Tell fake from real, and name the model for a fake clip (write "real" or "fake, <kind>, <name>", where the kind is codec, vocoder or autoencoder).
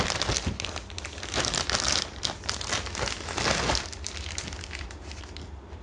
real